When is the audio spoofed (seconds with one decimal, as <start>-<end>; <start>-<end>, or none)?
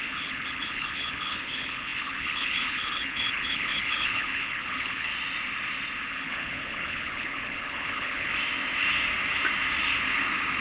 0.0-5.1; 6.1-8.3